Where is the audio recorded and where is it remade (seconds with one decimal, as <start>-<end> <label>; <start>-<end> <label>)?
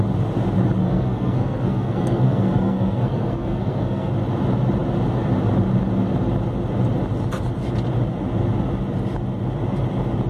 0.0-0.8 recorded; 0.8-4.1 remade; 4.1-10.3 recorded